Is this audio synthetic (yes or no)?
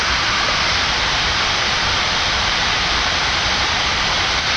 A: yes